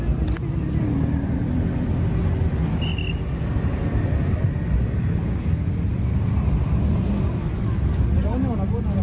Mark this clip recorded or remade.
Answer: recorded